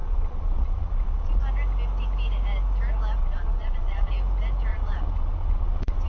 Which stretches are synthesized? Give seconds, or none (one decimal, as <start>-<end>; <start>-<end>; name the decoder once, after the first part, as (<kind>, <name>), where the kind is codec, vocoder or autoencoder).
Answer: 0.0-1.4 (vocoder, Vocos); 3.2-4.1; 4.7-6.1